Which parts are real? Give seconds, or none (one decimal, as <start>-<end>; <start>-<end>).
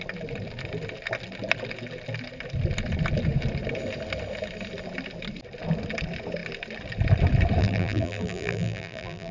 0.0-7.6